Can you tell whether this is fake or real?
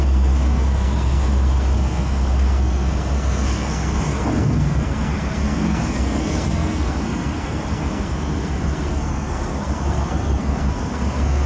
fake